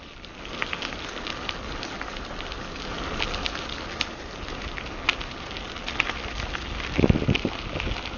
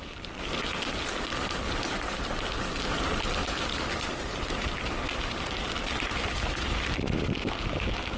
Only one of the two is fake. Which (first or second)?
second